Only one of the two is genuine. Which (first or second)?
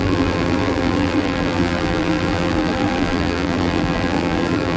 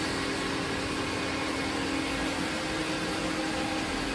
second